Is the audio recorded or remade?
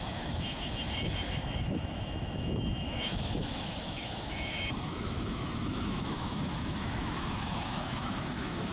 remade